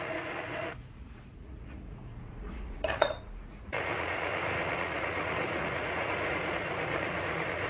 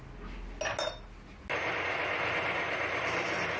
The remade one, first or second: first